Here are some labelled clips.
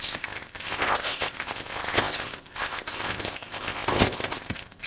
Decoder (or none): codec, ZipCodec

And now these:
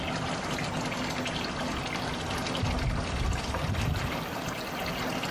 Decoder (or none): none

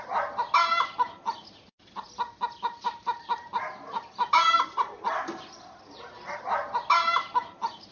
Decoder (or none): none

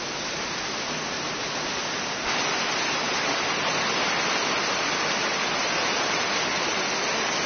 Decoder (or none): none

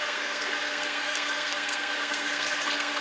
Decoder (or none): codec, SNAC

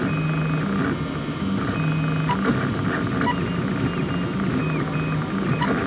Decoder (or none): none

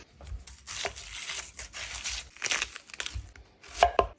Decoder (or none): none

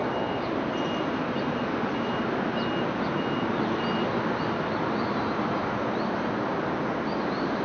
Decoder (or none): none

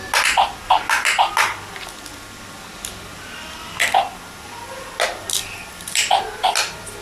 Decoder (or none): none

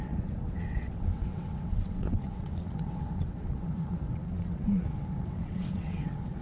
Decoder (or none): vocoder, WaveNeXt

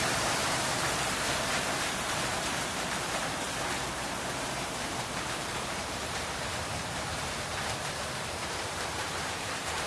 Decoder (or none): vocoder, BigVGAN v2